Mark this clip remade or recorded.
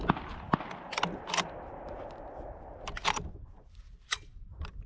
recorded